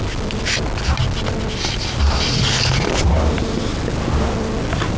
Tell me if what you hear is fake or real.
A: real